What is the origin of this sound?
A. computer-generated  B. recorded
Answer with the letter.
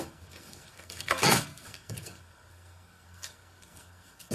A